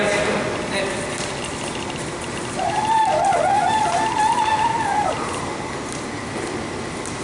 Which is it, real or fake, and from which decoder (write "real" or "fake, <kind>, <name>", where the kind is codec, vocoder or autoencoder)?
real